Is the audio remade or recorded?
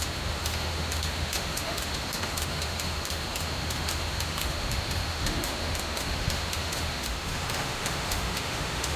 remade